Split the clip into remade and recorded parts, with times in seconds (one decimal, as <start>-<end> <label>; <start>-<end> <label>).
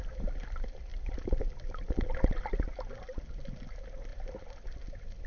0.0-5.3 recorded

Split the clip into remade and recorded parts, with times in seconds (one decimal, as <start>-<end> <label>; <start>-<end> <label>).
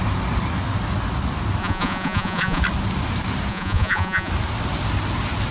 0.0-1.6 recorded; 1.6-2.6 remade; 2.6-3.5 recorded; 3.5-4.3 remade; 4.3-5.5 recorded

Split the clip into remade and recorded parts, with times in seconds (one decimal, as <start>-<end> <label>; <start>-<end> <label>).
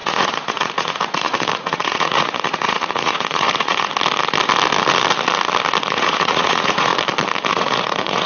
0.0-3.9 remade; 3.9-5.9 recorded; 5.9-6.9 remade; 6.9-7.5 recorded; 7.5-8.3 remade